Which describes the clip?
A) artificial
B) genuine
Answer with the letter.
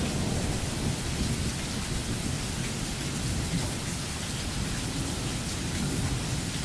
B